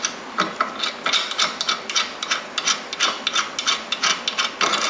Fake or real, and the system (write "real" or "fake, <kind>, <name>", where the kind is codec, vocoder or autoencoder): real